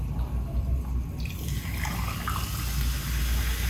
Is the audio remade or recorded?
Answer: recorded